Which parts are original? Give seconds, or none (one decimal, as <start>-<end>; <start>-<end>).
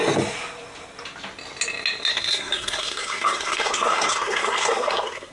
0.0-2.1